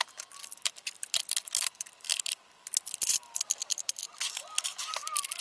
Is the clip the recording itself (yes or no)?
no